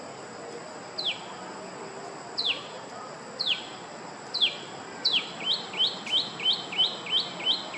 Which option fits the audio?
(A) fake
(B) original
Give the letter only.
B